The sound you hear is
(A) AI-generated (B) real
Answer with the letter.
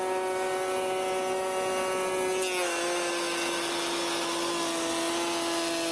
B